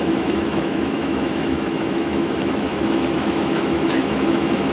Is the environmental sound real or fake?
fake